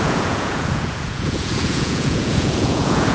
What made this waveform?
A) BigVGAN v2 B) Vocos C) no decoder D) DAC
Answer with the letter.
B